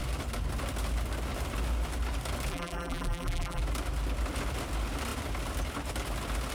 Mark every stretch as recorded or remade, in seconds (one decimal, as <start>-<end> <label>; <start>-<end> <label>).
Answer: 0.0-2.5 recorded; 2.5-3.6 remade; 3.6-6.5 recorded